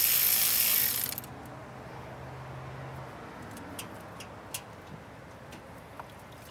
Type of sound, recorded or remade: recorded